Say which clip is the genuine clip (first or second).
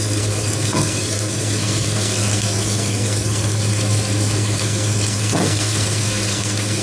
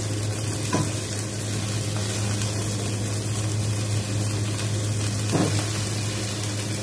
second